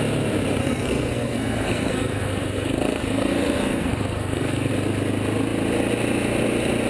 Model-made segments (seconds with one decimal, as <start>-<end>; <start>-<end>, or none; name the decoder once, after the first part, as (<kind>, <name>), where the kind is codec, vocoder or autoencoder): 0.6-4.7 (codec, SNAC)